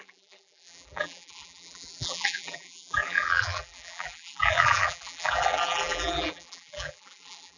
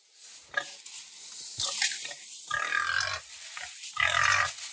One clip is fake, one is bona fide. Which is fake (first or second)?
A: first